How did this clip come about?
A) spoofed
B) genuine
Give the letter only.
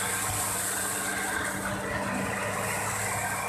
B